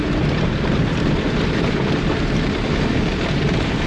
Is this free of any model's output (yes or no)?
no